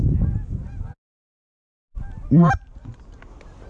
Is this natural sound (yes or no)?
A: yes